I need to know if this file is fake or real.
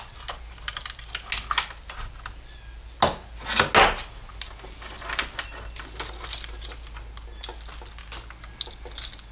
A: real